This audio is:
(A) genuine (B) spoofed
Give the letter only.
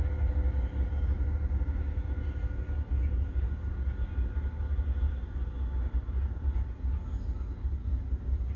A